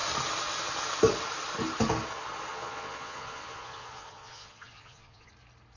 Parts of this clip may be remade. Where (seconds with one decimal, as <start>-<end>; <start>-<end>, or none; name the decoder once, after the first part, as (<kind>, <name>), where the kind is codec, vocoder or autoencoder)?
2.5-5.3 (vocoder, Vocos)